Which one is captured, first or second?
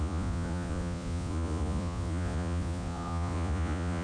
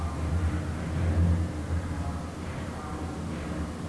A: second